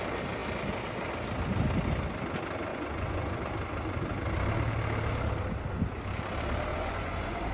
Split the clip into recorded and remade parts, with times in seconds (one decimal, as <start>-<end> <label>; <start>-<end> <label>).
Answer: 0.0-2.7 recorded; 2.7-3.4 remade; 3.4-6.7 recorded; 6.7-7.5 remade